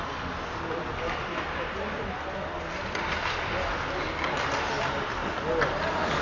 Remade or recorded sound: recorded